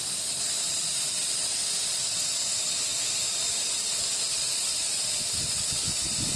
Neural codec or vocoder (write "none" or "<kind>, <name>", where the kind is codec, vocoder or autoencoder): none